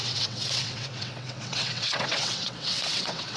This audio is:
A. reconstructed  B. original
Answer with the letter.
A